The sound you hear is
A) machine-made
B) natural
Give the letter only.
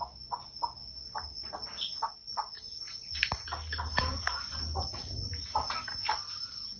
B